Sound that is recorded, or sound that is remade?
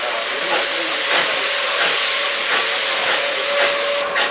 recorded